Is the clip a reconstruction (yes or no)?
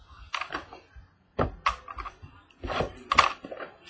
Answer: no